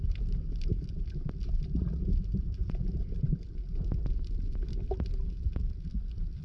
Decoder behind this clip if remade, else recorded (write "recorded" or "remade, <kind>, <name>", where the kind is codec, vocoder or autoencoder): recorded